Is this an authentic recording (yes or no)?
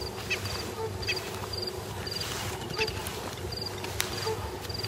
yes